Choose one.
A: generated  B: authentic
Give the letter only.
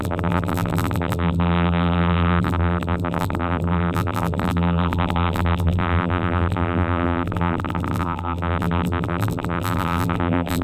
A